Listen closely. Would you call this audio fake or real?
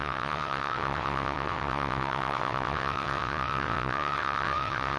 fake